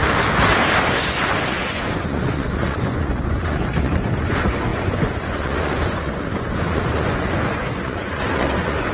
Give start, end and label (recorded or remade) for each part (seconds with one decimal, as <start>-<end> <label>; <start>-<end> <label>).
0.0-1.0 recorded; 1.0-8.9 remade

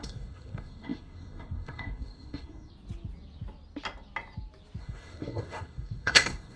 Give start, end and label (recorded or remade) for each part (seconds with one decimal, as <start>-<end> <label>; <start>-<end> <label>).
0.0-2.7 remade; 2.7-4.8 recorded; 4.8-6.6 remade

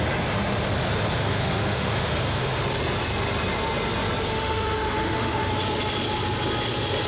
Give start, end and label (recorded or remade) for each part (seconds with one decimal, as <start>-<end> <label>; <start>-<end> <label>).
0.0-1.2 recorded; 1.2-2.6 remade; 2.6-4.3 recorded; 4.3-5.5 remade; 5.5-7.1 recorded